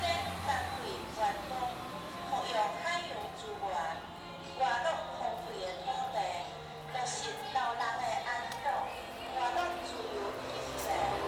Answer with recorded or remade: remade